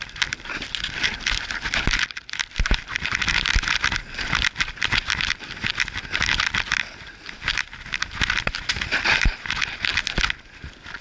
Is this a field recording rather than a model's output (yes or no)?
yes